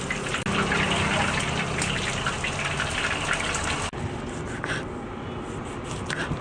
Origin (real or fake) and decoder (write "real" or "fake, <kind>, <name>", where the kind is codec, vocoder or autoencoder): real